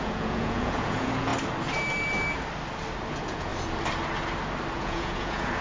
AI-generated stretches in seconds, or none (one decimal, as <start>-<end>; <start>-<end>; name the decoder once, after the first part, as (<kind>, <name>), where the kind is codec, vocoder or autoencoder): 0.0-1.3 (vocoder, Vocos); 3.1-3.5; 4.7-5.6

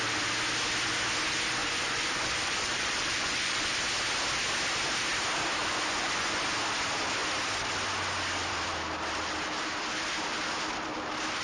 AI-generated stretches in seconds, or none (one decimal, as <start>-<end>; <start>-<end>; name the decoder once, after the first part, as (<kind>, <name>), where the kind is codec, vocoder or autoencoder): 1.6-3.8 (vocoder, Vocos); 5.6-6.4

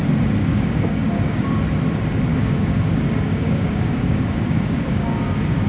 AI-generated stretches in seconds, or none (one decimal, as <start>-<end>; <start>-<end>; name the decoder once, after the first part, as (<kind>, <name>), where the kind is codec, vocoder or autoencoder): 0.4-1.6 (codec, DAC); 2.3-5.7

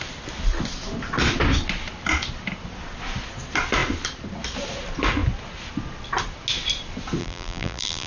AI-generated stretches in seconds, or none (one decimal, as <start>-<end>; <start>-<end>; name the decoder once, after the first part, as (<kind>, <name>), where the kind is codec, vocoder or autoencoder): 7.2-8.1 (vocoder, BigVGAN v2)

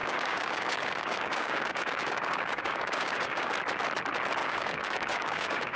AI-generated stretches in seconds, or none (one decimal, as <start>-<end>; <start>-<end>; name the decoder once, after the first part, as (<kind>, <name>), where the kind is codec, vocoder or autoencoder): 0.0-3.5 (codec, DAC); 4.4-5.8

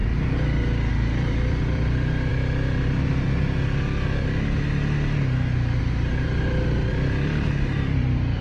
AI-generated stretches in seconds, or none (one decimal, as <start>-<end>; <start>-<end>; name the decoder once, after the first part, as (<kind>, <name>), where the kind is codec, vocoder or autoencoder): 0.9-2.3 (vocoder, BigVGAN v2); 5.8-8.4

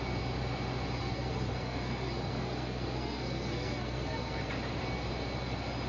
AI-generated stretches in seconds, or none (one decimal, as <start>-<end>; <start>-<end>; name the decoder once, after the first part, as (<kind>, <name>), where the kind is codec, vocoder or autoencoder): 1.0-4.5 (codec, SNAC)